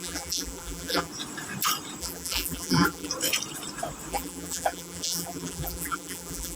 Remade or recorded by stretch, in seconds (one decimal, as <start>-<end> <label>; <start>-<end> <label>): 0.0-1.1 remade; 1.1-2.0 recorded; 2.0-3.1 remade; 3.1-4.1 recorded; 4.1-6.6 remade